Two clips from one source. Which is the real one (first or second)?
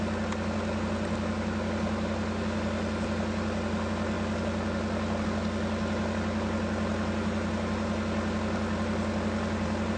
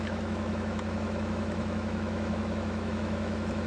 first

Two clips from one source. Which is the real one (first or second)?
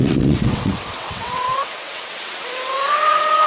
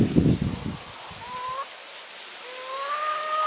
second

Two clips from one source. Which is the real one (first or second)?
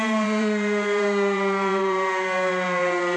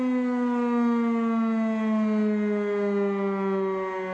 second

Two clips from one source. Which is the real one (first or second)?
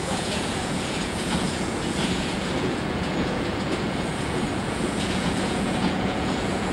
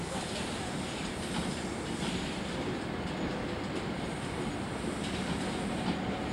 second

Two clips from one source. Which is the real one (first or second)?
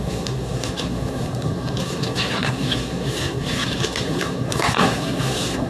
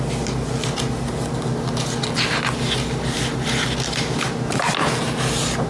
second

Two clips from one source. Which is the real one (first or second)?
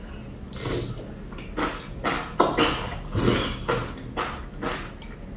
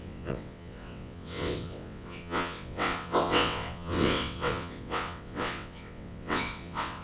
first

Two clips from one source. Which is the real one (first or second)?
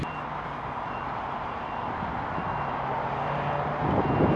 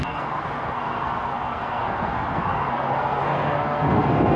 first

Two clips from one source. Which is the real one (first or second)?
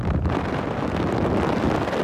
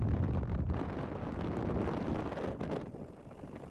second